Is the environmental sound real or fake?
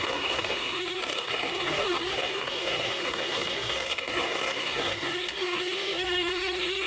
fake